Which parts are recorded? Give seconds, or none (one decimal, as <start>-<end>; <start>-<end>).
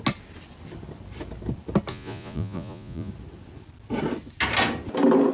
0.0-1.9; 3.1-5.3